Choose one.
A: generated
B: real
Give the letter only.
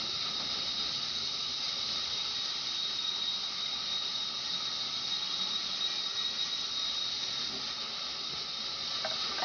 B